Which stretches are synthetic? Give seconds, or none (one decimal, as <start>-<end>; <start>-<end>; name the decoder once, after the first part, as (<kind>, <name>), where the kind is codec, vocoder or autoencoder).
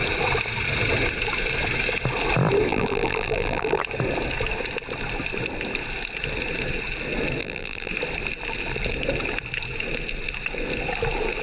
2.7-3.8 (vocoder, BigVGAN v2); 7.4-7.9